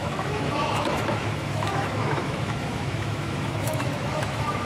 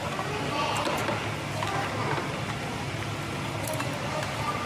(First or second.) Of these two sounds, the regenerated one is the first